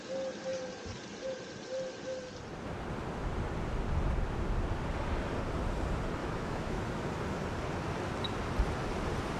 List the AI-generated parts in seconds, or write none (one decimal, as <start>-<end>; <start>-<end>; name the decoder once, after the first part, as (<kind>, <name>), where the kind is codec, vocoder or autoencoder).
6.2-6.8 (autoencoder, DAC-VAE)

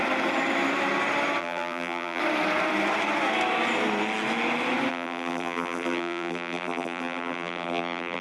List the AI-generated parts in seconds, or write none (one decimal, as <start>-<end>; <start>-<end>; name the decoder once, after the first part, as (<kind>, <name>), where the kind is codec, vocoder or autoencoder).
1.4-2.2 (vocoder, BigVGAN v2); 4.9-8.2

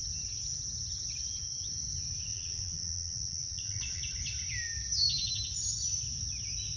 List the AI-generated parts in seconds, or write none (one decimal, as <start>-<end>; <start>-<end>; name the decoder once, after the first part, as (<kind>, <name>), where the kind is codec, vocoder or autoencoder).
2.3-4.0 (vocoder, Vocos)

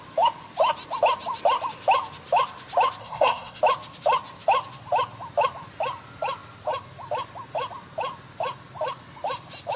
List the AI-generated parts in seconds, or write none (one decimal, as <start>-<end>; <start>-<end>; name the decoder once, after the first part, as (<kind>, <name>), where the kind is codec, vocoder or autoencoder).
3.0-3.6 (codec, SNAC)

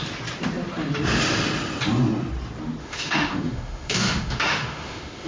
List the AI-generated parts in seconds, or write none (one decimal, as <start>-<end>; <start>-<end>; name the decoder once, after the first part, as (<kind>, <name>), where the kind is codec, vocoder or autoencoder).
2.8-5.3 (autoencoder, DAC-VAE)

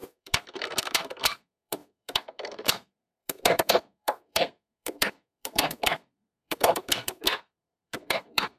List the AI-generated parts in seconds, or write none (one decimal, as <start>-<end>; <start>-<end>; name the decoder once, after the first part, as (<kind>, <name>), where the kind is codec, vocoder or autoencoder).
0.0-8.6 (codec, SNAC)

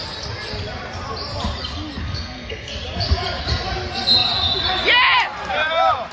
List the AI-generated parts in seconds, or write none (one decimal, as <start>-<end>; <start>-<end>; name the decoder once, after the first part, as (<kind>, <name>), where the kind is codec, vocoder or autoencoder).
2.0-2.7 (codec, SNAC)